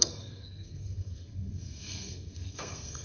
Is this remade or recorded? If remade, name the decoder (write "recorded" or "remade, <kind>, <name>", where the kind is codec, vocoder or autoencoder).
remade, codec, SNAC